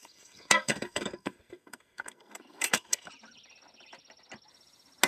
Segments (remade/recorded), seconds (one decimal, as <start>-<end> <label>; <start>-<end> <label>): 0.0-3.1 remade; 3.1-5.1 recorded